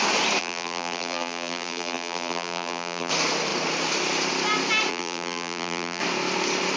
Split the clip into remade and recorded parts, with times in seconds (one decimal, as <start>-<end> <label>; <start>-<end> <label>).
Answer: 0.0-0.4 recorded; 0.4-3.1 remade; 3.1-4.9 recorded; 4.9-6.0 remade; 6.0-6.8 recorded